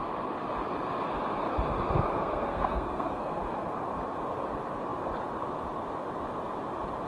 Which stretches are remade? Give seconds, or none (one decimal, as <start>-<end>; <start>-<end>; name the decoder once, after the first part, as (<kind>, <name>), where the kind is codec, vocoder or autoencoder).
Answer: 2.1-3.4 (codec, SNAC)